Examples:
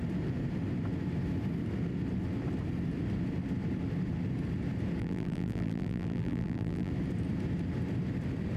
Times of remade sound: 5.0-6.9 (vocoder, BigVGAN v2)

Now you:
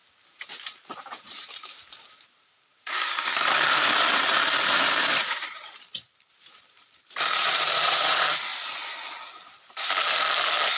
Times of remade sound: 0.0-8.5 (vocoder, BigVGAN v2)

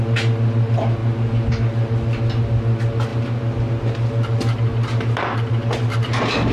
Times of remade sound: none